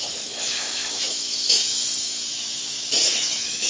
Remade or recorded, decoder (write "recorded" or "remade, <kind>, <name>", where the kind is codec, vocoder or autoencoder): remade, autoencoder, DAC-VAE